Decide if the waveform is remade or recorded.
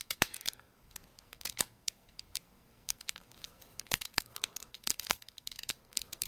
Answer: remade